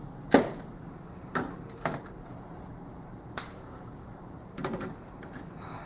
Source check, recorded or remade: remade